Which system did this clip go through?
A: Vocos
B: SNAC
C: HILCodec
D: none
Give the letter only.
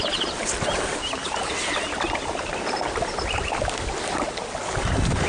D